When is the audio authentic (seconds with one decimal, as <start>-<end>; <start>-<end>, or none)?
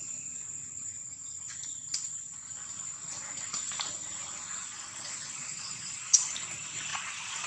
0.0-4.6; 6.3-6.9